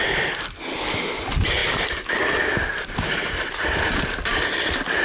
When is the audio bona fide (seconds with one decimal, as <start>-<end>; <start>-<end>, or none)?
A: 0.0-5.0